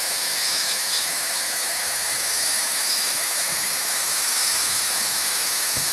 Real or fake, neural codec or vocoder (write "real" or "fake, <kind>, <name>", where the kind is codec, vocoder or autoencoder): fake, autoencoder, DAC-VAE